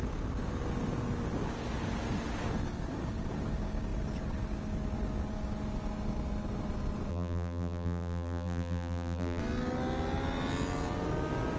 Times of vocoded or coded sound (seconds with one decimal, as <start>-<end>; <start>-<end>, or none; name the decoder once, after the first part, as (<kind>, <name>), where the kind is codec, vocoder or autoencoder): 7.1-9.4 (vocoder, BigVGAN v2)